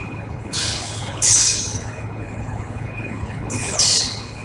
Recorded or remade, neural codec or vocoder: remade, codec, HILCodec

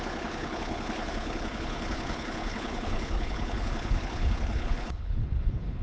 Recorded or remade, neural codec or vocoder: remade, codec, HILCodec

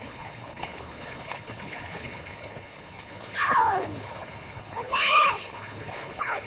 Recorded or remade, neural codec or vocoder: remade, codec, HILCodec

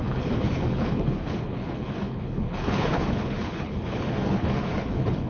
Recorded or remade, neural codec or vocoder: remade, codec, HILCodec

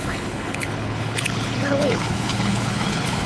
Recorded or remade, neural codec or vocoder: remade, codec, HILCodec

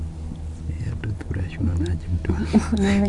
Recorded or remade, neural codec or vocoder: recorded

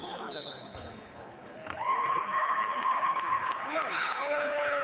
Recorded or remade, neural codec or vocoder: remade, codec, HILCodec